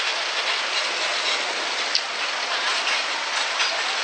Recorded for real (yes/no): yes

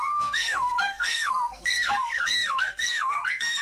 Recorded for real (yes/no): no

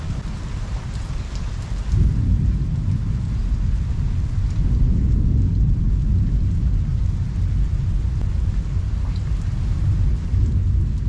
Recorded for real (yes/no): yes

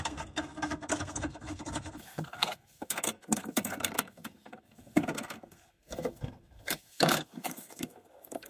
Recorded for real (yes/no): no